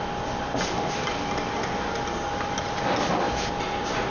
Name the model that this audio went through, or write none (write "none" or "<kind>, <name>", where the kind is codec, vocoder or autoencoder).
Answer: none